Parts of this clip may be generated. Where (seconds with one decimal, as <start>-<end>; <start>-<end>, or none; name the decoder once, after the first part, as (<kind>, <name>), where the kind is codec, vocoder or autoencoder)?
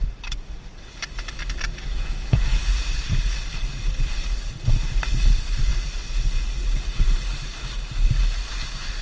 1.9-2.6 (vocoder, Vocos)